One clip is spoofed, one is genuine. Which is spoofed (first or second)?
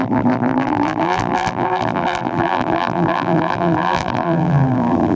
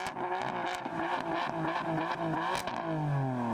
first